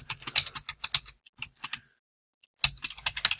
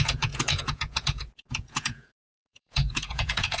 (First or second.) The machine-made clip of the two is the second